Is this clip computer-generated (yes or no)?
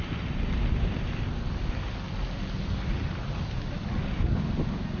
no